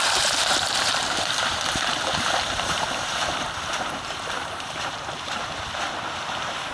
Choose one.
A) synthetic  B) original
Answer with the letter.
A